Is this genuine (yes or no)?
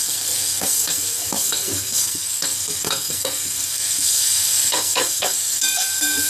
no